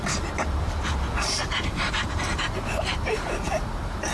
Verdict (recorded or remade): remade